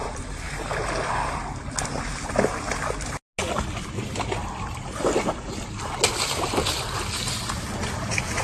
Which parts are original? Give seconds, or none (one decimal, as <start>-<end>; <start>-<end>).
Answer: 0.0-8.4